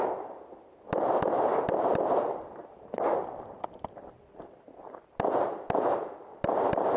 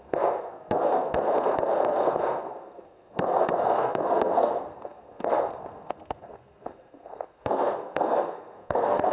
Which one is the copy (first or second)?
second